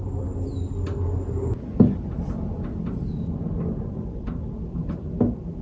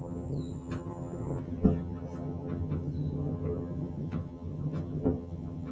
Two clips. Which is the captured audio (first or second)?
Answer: first